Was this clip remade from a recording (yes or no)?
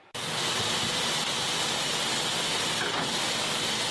no